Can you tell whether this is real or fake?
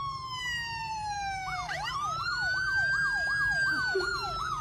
fake